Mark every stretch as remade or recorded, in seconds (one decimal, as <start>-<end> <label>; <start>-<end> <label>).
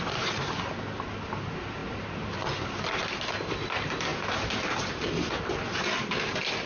0.0-6.7 recorded